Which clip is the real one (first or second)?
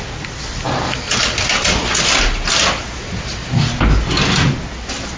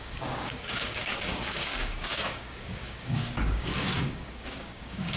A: first